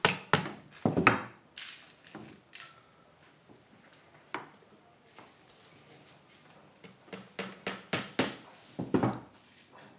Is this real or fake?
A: real